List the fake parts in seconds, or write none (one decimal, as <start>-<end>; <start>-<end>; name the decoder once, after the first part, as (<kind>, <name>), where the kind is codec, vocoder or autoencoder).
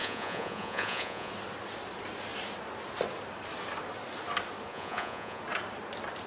0.0-1.3 (vocoder, Vocos); 4.7-5.4